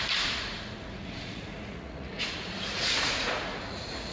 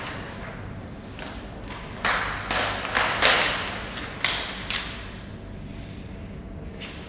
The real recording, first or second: second